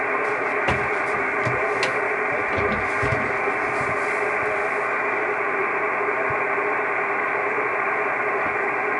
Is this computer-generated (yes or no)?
no